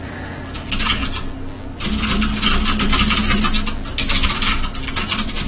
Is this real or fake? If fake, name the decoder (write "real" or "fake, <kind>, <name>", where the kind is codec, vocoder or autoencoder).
real